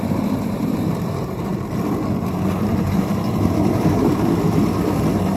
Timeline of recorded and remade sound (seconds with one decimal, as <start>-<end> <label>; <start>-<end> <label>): 0.0-1.5 remade; 1.5-2.3 recorded; 2.3-5.4 remade